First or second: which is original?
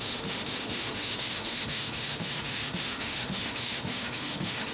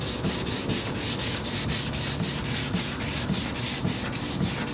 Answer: second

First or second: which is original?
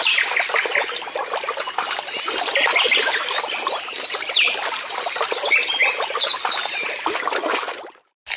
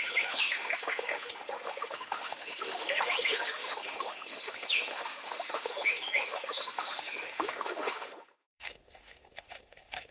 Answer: first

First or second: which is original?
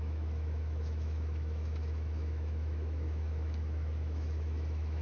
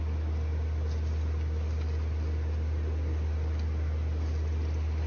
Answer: second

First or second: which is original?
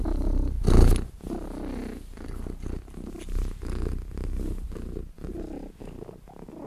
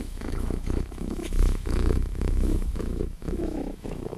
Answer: first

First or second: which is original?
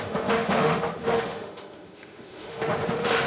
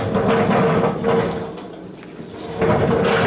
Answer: second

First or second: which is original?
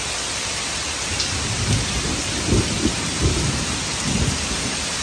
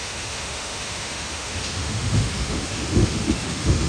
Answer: first